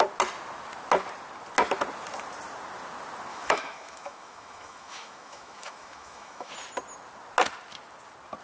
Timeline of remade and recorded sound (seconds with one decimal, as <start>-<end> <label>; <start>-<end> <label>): 0.0-3.3 recorded; 3.3-6.5 remade; 6.5-8.4 recorded